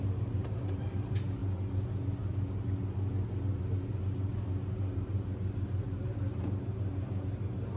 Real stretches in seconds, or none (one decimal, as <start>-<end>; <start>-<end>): 1.4-3.6